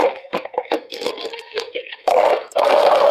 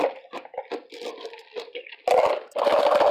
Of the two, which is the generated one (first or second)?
first